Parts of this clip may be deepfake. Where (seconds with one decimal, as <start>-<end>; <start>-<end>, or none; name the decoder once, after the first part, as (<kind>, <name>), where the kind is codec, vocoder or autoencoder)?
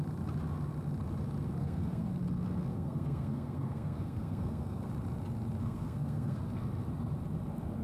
1.6-2.1 (codec, SNAC); 2.7-4.9; 5.6-6.4